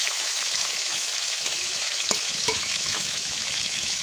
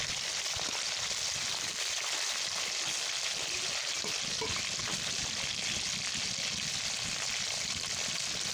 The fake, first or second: first